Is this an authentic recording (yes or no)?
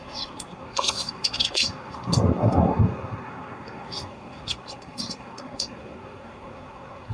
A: no